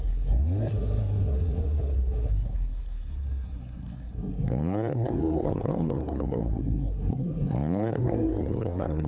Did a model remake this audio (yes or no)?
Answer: yes